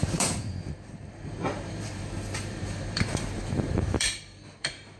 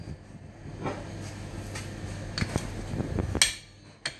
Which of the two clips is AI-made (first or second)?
first